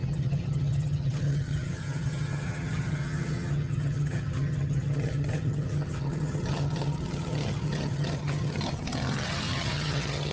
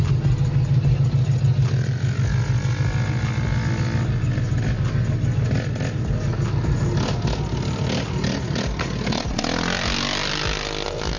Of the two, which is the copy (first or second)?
first